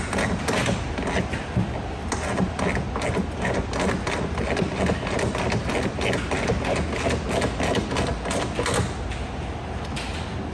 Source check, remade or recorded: recorded